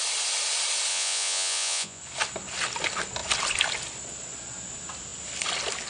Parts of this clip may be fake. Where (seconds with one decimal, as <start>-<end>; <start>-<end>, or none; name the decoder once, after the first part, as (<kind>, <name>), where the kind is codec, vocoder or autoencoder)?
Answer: 0.9-2.0 (vocoder, Vocos)